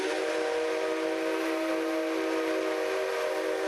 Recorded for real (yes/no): yes